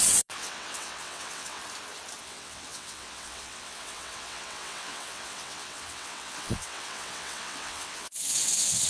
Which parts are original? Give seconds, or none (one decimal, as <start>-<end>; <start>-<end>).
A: 1.6-2.2